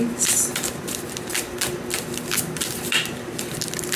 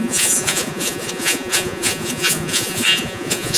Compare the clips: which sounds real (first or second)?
first